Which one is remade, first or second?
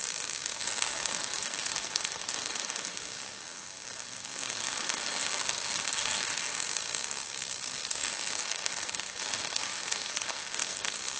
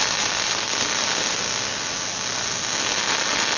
first